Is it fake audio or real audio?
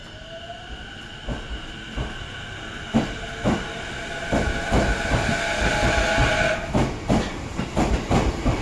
real